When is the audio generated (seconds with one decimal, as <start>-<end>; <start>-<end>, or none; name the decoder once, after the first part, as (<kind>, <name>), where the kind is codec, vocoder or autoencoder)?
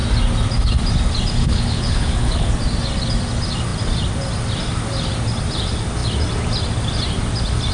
1.4-2.5 (codec, HILCodec)